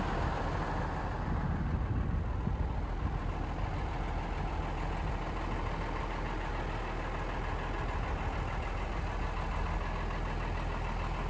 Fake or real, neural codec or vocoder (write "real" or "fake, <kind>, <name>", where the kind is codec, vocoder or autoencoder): real